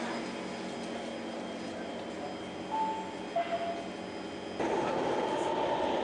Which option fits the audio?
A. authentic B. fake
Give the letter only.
A